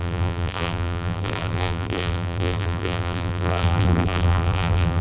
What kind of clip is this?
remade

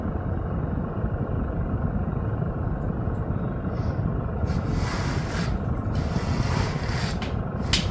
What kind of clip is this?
recorded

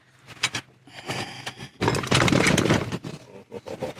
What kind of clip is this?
recorded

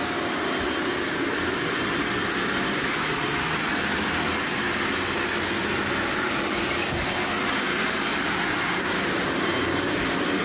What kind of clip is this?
remade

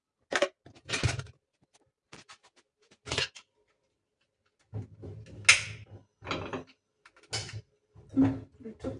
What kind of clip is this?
recorded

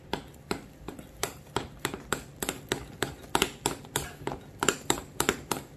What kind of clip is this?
remade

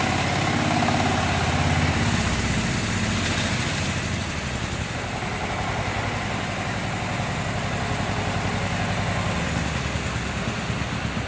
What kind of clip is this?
recorded